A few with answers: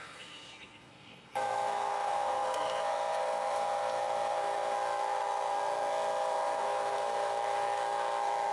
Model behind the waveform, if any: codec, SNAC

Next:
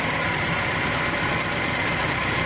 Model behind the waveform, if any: vocoder, BigVGAN v2